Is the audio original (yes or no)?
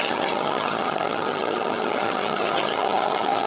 no